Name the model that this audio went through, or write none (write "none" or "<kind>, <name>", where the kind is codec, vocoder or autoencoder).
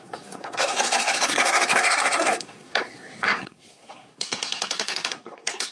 codec, SNAC